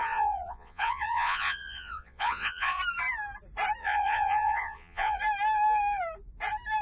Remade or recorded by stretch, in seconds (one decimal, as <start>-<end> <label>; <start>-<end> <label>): 0.0-2.8 remade; 2.8-3.8 recorded; 3.8-5.2 remade; 5.2-6.8 recorded